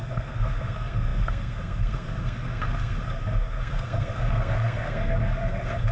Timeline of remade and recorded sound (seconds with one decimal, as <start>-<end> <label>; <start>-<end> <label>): 0.0-5.9 remade